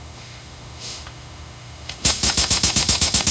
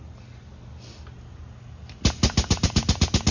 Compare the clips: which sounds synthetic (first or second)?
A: first